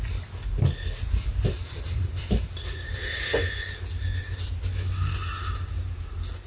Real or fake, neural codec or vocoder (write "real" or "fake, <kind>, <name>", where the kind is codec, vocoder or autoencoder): real